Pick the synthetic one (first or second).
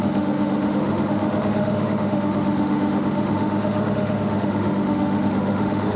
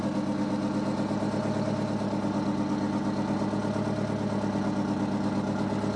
first